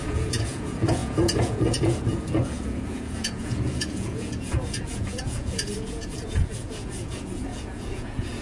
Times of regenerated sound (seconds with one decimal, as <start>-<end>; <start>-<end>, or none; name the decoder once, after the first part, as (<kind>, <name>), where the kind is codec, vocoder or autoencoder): 0.0-8.4 (vocoder, Vocos)